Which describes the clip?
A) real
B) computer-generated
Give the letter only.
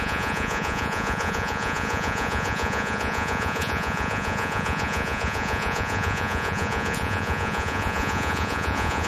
B